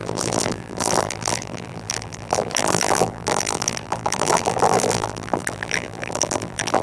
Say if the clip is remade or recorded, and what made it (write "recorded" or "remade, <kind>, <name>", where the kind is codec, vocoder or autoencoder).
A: remade, vocoder, BigVGAN v2